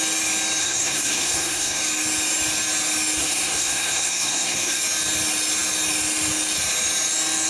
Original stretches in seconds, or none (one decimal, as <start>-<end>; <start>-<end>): 0.0-0.6; 1.8-3.2; 4.8-7.5